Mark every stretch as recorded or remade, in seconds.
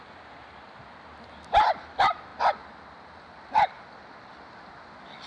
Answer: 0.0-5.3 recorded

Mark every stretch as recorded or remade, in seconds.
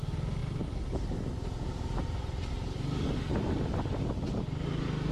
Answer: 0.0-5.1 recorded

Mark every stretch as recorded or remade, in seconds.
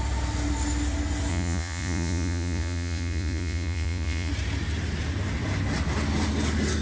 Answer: 0.0-1.3 recorded; 1.3-4.3 remade; 4.3-6.8 recorded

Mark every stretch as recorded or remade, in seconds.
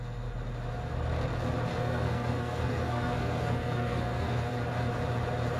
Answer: 0.0-1.7 recorded; 1.7-4.5 remade; 4.5-5.6 recorded